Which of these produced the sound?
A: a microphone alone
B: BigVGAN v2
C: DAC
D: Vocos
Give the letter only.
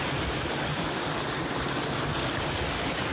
A